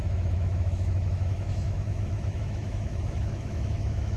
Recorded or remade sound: remade